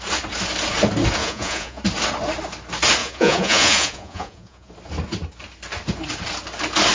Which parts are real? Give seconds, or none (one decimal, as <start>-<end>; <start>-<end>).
0.0-1.2; 1.8-3.0; 4.7-6.9